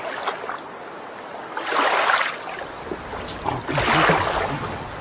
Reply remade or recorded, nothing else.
recorded